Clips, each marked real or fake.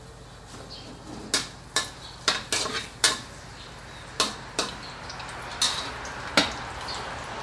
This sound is real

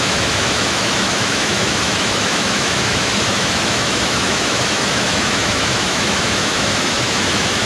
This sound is fake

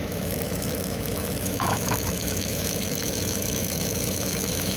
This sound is fake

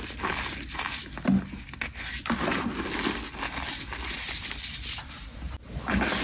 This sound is real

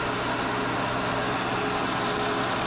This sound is real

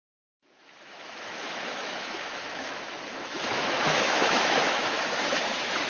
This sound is fake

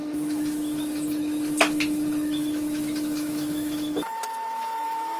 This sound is fake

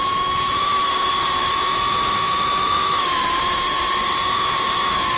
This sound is fake